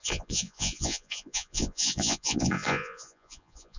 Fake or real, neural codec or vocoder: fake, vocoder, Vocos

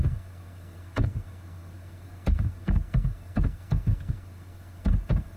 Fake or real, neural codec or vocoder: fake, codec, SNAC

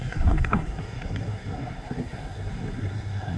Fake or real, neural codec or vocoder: fake, codec, SNAC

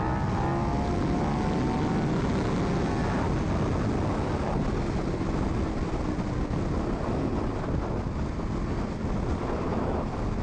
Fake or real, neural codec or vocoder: real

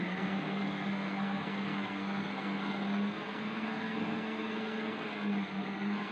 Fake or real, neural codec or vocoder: fake, codec, SNAC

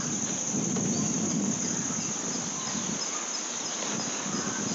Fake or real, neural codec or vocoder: real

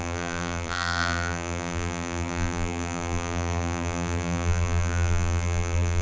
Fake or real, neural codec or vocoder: fake, vocoder, BigVGAN v2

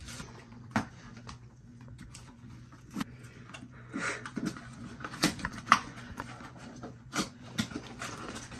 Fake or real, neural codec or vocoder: fake, vocoder, Vocos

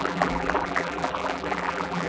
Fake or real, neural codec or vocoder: fake, vocoder, BigVGAN v2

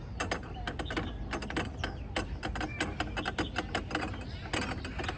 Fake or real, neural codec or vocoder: real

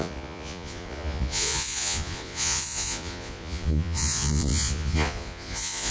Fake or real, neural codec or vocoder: fake, vocoder, Vocos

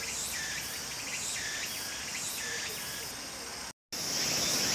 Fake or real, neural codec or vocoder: real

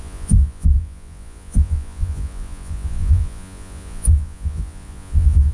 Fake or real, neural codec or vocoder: fake, vocoder, Vocos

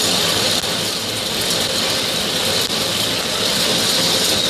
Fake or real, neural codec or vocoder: real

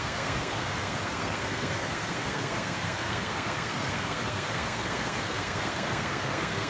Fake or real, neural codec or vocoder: fake, codec, SNAC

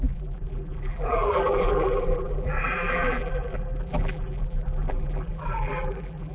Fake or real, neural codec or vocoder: fake, vocoder, BigVGAN v2